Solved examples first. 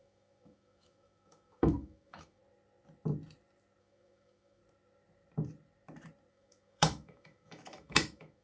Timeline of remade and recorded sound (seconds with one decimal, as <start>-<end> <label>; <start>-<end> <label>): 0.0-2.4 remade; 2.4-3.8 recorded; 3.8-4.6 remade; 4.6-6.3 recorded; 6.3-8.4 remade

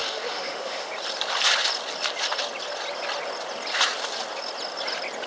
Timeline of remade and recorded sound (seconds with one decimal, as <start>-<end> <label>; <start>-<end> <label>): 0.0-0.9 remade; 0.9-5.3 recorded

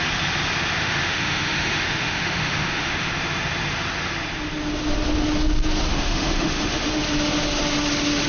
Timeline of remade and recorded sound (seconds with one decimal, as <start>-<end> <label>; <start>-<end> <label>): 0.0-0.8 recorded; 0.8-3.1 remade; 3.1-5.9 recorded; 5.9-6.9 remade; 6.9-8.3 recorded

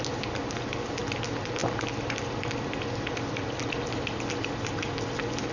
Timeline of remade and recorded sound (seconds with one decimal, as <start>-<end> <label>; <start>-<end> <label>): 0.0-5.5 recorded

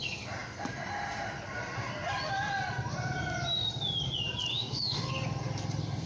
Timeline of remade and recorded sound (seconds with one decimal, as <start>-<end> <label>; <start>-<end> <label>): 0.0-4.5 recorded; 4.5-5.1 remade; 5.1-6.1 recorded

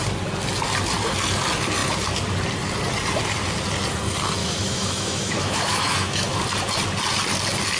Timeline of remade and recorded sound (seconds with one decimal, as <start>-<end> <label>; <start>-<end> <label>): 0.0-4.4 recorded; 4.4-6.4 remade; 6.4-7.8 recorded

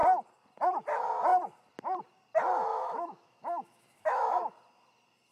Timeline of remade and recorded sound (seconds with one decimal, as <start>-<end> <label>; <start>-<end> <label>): 0.0-2.7 recorded; 2.7-4.5 remade; 4.5-5.3 recorded

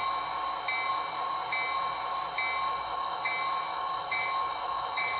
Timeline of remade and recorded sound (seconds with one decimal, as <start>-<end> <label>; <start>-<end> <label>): 0.0-2.7 recorded; 2.7-3.3 remade; 3.3-3.7 recorded; 3.7-5.2 remade